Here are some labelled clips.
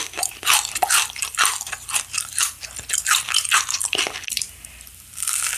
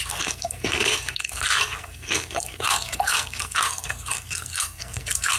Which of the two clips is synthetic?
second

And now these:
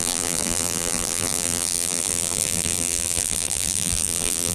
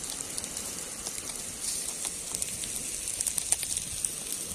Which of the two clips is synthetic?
first